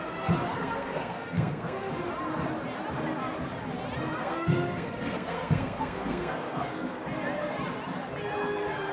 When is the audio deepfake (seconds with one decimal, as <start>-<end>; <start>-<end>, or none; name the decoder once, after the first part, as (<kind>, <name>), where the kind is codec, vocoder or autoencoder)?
0.5-1.9 (codec, SNAC); 4.2-7.0